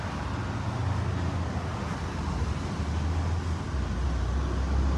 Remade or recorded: recorded